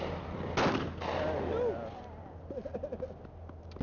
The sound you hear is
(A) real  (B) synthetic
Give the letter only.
A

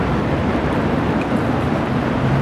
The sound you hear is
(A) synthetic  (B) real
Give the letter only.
B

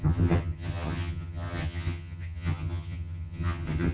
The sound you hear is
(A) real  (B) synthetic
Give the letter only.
B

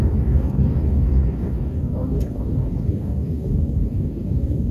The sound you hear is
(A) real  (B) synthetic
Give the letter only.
B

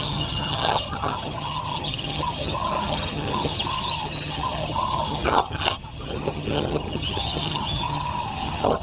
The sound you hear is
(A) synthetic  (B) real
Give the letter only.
A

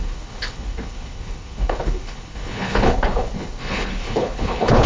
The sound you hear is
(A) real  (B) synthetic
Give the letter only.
B